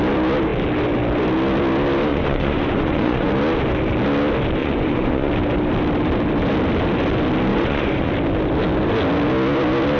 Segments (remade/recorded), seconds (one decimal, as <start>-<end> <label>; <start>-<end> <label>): 0.0-2.1 recorded; 2.1-3.3 remade; 3.3-4.6 recorded; 4.6-5.3 remade; 5.3-7.5 recorded; 7.5-8.1 remade; 8.1-10.0 recorded